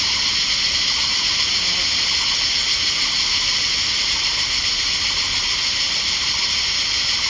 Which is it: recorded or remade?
recorded